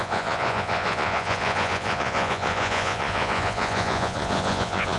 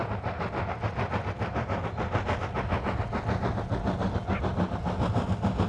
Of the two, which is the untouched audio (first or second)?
second